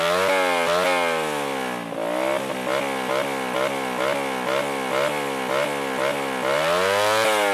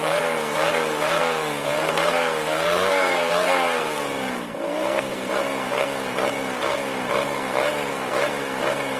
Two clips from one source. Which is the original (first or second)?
first